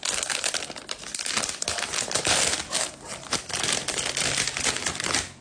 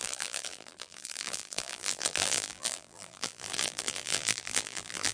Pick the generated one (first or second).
second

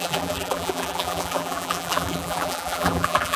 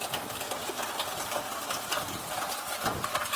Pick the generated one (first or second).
first